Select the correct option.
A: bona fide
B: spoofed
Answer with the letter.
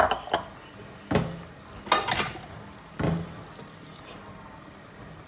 A